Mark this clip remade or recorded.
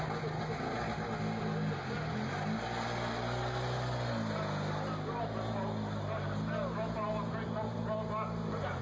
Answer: recorded